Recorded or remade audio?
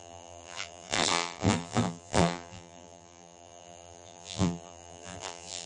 remade